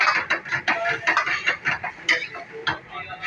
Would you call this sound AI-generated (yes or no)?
no